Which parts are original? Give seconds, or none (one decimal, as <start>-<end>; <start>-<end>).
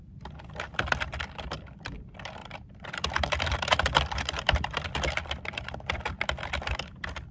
0.0-0.7; 1.8-2.4; 6.6-7.3